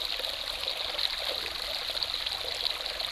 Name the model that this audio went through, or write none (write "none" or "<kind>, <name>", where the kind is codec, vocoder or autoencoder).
none